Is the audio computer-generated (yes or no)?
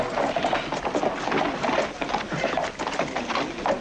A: no